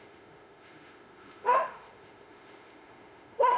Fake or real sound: fake